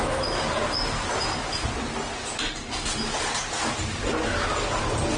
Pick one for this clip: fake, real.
real